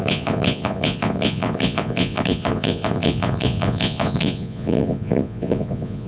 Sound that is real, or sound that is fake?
fake